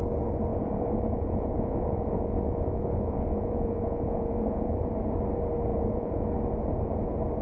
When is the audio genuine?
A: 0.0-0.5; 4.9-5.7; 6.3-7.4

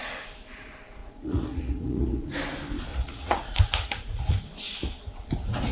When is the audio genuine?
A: 0.0-1.0; 2.2-2.9; 4.4-5.7